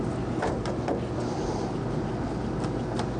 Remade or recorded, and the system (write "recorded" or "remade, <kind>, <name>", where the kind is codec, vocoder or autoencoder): recorded